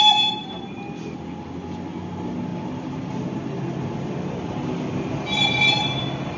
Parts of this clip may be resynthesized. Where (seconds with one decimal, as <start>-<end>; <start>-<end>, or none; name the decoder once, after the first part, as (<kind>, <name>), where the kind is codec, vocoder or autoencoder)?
none